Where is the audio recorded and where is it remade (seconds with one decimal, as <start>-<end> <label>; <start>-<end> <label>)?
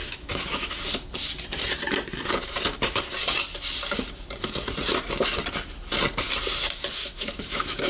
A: 0.0-0.8 remade; 0.8-7.0 recorded; 7.0-7.9 remade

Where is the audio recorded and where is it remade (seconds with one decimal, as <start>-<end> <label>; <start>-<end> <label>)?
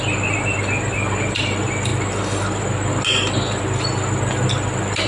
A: 0.0-5.1 recorded